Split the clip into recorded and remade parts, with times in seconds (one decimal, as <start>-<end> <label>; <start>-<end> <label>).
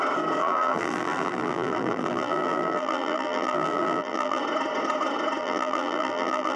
0.0-0.4 recorded; 0.4-4.4 remade; 4.4-5.4 recorded; 5.4-6.6 remade